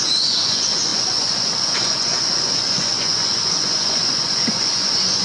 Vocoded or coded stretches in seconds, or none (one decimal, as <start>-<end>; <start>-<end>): 0.0-5.2